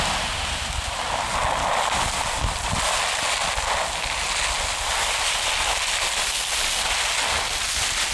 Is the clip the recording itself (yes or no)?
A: yes